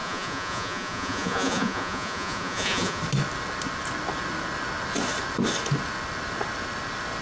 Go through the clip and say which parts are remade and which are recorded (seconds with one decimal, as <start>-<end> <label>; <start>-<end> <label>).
0.0-3.0 remade; 3.0-7.2 recorded